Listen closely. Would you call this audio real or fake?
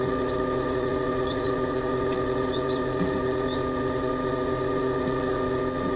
fake